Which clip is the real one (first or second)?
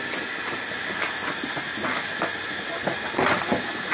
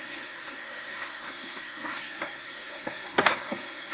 first